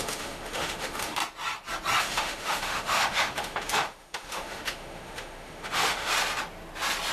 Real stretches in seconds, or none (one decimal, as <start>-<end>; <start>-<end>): 1.2-2.0; 6.1-7.1